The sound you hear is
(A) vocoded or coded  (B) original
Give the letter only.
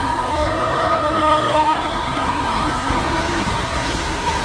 A